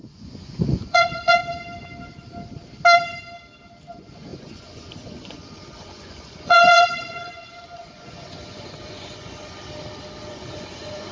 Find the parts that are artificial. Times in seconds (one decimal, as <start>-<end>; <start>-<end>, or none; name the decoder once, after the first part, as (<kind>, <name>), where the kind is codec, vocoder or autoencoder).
0.0-1.4 (vocoder, Vocos); 3.9-9.6; 10.2-11.1